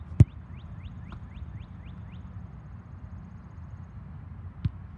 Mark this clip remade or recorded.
recorded